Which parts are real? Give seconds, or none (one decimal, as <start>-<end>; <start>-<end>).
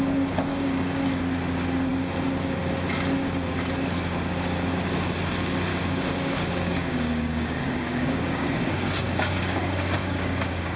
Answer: 0.0-0.5; 1.2-5.7